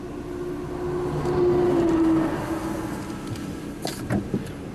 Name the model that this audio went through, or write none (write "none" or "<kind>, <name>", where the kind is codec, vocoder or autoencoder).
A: none